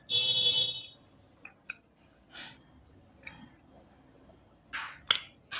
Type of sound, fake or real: real